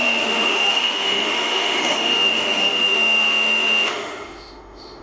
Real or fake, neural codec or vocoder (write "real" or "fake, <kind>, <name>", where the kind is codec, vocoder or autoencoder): fake, autoencoder, DAC-VAE